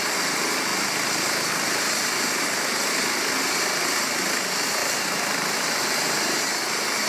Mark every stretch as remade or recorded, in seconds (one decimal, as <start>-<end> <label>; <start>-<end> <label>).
0.0-4.8 recorded; 4.8-6.2 remade; 6.2-7.1 recorded